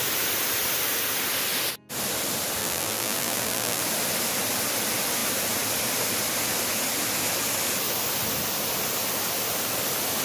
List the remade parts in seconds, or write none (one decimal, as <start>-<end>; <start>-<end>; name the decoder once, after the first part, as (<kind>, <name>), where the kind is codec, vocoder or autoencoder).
2.6-3.8 (vocoder, BigVGAN v2)